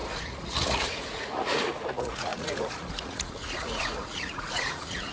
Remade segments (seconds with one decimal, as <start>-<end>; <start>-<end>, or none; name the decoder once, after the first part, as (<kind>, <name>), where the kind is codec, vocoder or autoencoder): 0.0-5.1 (vocoder, Vocos)